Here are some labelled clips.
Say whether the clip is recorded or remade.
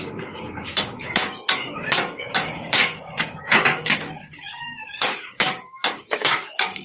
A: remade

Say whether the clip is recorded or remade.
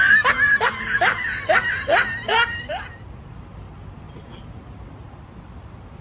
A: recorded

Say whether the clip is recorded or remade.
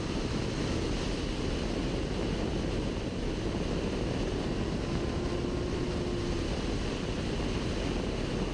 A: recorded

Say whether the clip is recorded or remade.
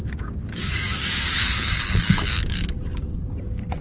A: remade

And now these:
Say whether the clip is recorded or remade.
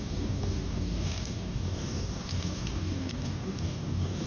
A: remade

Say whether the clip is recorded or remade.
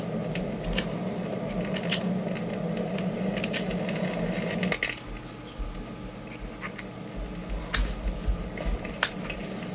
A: recorded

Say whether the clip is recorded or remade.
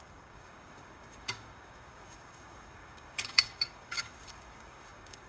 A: remade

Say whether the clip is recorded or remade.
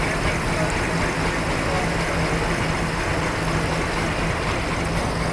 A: recorded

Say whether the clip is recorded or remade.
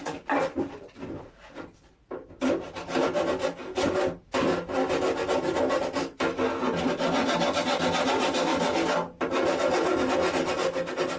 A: recorded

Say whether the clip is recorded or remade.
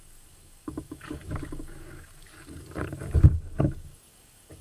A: remade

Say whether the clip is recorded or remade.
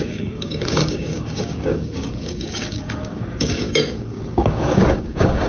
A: remade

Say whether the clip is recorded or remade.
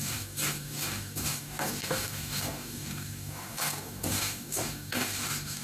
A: remade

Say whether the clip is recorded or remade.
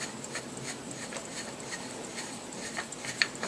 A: recorded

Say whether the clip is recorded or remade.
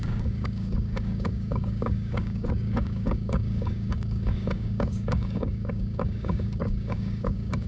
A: remade